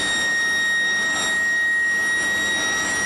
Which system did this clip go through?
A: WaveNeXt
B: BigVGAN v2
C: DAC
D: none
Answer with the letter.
D